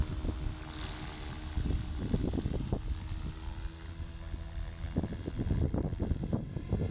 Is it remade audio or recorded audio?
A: recorded